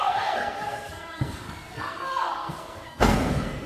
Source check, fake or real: fake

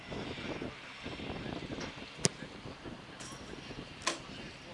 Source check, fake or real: real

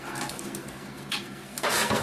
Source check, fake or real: fake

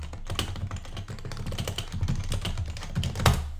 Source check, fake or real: real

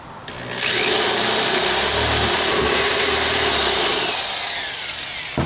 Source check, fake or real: real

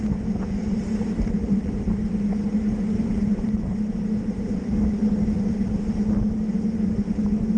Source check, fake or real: real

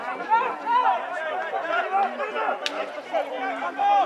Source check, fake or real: real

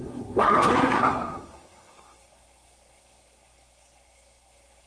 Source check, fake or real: fake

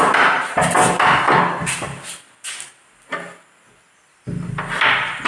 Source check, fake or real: real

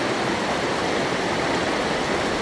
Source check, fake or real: real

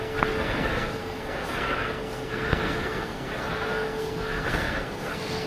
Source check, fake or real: fake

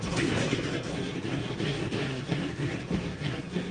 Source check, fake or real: fake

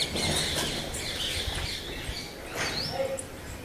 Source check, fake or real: real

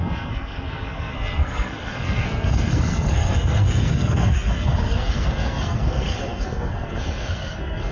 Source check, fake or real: fake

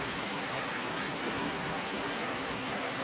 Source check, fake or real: fake